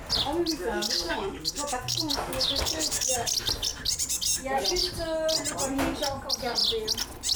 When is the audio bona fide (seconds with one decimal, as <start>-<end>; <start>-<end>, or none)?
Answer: 0.0-0.5; 3.1-7.4